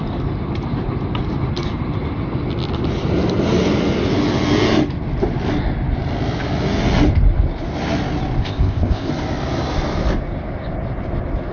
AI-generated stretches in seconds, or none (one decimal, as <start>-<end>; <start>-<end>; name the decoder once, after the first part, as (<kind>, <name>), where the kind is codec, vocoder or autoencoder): 8.4-9.1 (codec, ZipCodec)